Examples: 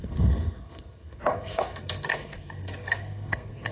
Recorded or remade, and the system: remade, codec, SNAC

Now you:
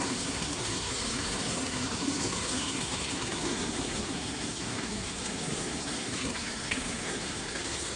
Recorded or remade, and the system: remade, codec, SNAC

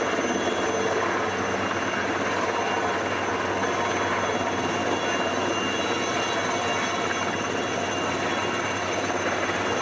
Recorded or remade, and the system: recorded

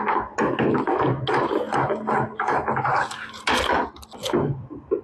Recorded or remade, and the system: recorded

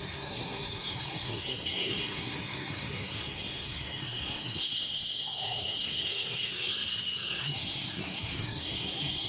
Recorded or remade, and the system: remade, codec, SNAC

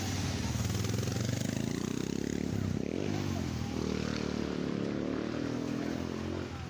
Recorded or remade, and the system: recorded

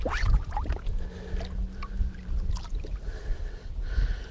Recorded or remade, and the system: recorded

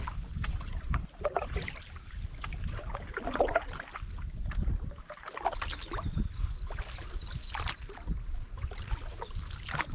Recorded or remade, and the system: recorded